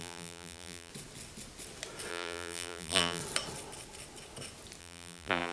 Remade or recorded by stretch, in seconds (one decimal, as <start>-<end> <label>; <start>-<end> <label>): 0.0-0.9 remade; 0.9-2.1 recorded; 2.1-3.2 remade; 3.2-4.8 recorded; 4.8-5.5 remade